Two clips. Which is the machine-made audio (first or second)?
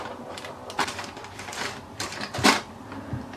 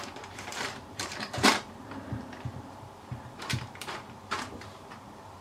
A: second